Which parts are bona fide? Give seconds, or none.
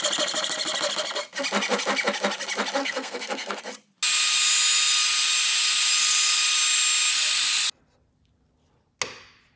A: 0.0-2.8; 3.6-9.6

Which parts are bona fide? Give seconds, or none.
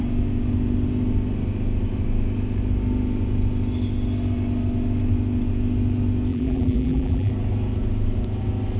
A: 0.0-6.3; 7.3-8.8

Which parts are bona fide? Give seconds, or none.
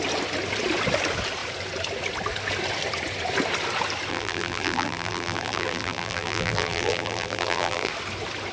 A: 0.0-4.1; 7.9-8.5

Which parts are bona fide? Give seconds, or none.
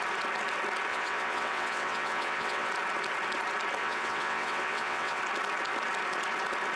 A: 0.0-0.9; 2.7-3.8; 5.2-6.8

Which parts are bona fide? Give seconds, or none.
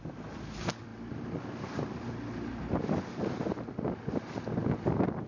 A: 0.0-5.3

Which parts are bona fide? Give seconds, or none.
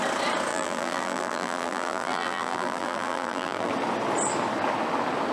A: 0.0-0.5; 3.7-5.3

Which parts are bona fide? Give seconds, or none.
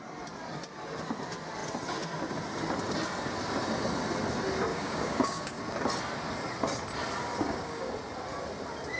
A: 0.0-4.7; 5.6-7.3; 7.9-9.0